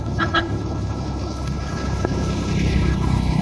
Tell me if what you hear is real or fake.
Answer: fake